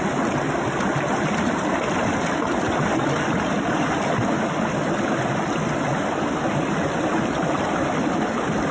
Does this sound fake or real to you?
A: real